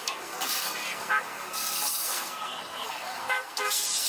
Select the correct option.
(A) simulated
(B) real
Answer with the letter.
A